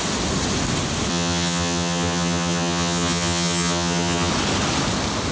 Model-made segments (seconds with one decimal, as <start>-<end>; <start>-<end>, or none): 1.1-4.3